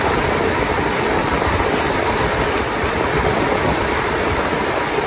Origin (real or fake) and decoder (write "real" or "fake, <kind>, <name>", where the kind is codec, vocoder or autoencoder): fake, vocoder, BigVGAN v2